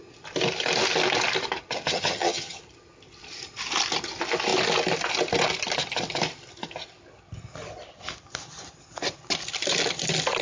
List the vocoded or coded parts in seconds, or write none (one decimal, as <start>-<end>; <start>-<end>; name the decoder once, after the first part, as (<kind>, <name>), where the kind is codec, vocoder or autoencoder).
1.9-2.6 (vocoder, HiFi-GAN)